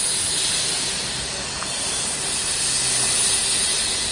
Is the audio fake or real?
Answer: real